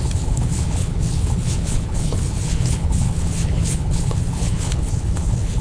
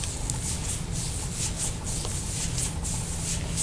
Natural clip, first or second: second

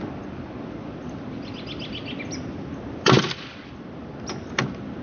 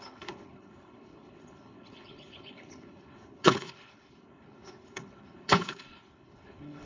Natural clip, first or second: first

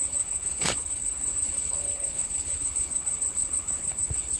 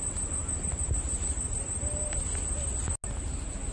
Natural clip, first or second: second